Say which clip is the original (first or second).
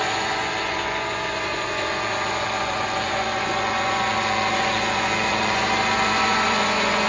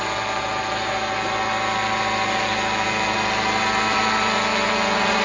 second